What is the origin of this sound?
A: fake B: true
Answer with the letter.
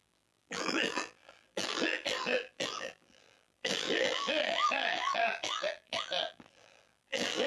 A